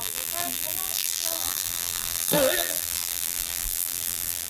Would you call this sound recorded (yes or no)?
no